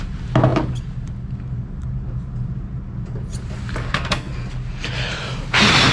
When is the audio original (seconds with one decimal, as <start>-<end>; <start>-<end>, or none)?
0.0-3.8; 4.3-5.9